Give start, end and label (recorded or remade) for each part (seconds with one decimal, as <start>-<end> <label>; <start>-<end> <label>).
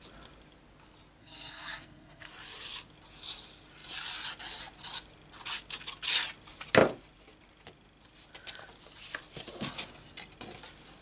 0.0-1.2 recorded; 1.2-2.3 remade; 2.3-11.0 recorded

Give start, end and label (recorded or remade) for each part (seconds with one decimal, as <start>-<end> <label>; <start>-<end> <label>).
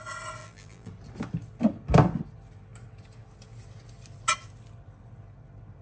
0.0-0.4 recorded; 0.4-0.9 remade; 0.9-5.8 recorded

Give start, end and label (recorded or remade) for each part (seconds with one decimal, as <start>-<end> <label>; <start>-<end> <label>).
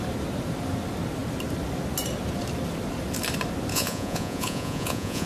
0.0-3.7 recorded; 3.7-5.3 remade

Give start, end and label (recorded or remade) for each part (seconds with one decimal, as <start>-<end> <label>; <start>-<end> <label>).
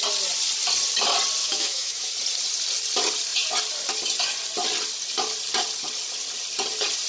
0.0-1.4 recorded; 1.4-2.1 remade; 2.1-7.1 recorded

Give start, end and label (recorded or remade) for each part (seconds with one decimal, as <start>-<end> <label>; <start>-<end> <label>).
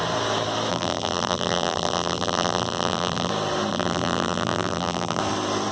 0.0-0.7 recorded; 0.7-3.3 remade; 3.3-3.7 recorded; 3.7-5.2 remade; 5.2-5.7 recorded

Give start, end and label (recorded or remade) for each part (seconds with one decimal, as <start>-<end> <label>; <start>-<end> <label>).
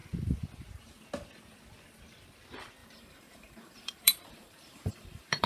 0.0-2.8 recorded; 2.8-5.5 remade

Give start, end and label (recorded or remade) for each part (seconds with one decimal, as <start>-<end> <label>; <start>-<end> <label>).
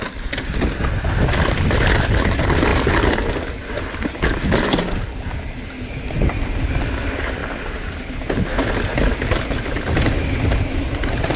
0.0-11.4 recorded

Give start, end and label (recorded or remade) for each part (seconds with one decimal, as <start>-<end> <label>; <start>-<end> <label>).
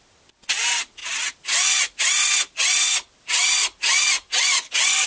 0.0-5.1 recorded